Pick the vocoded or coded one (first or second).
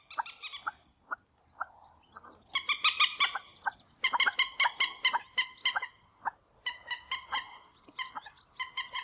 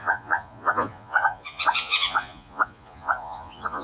second